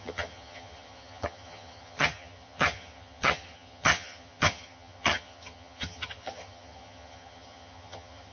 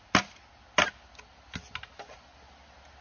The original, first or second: second